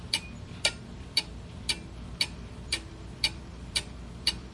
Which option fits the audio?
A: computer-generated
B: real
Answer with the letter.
A